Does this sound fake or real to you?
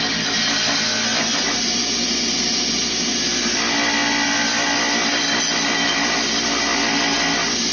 real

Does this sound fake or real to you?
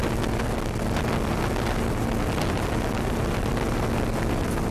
real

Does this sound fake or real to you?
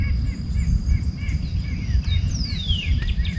real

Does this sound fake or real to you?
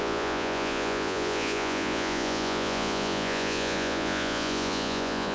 fake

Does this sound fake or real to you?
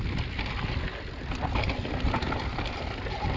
real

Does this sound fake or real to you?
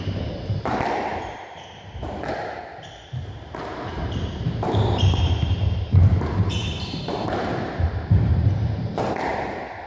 fake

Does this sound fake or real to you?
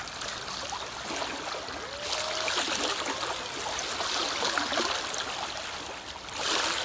real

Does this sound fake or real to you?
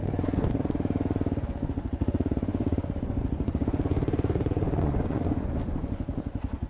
fake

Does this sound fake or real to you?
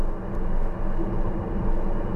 real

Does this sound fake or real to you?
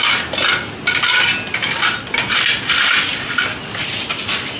real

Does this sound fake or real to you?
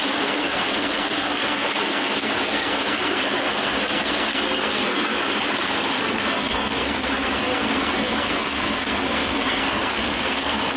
fake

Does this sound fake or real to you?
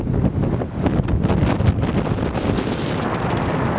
real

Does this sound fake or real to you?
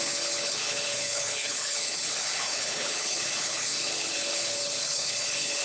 fake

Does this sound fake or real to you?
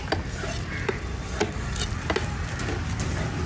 real